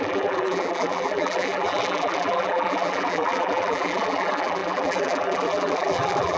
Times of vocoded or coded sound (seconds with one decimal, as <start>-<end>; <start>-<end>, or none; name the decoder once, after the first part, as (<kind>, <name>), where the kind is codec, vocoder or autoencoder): 0.0-6.4 (vocoder, BigVGAN v2)